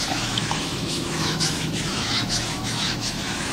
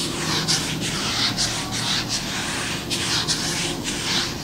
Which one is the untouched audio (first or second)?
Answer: second